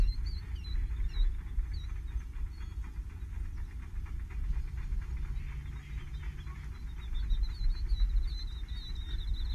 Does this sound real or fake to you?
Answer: real